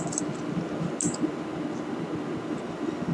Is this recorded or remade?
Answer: recorded